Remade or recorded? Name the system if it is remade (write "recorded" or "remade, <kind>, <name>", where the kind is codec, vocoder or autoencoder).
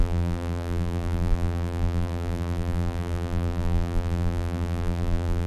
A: remade, vocoder, BigVGAN v2